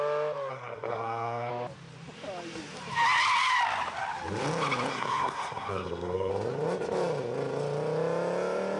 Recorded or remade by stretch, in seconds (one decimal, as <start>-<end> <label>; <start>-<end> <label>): 0.0-0.5 recorded; 0.5-1.5 remade; 1.5-4.9 recorded; 4.9-6.3 remade; 6.3-8.8 recorded